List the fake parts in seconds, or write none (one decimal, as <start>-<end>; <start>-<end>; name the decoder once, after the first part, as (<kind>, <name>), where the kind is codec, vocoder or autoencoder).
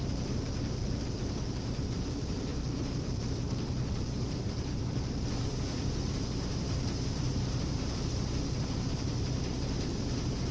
0.0-10.5 (vocoder, BigVGAN v2)